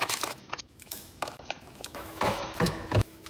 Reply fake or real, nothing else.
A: fake